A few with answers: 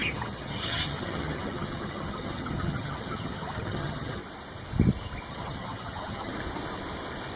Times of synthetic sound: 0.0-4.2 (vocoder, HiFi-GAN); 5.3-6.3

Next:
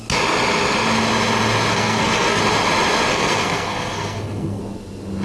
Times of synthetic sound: 1.7-2.4 (codec, SNAC); 3.1-4.6

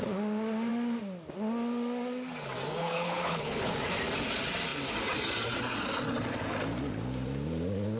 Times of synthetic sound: 2.8-3.7 (codec, HILCodec)

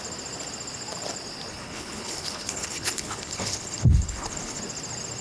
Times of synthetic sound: 1.5-4.6 (codec, HILCodec)

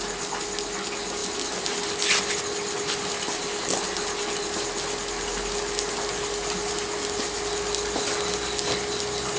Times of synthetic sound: none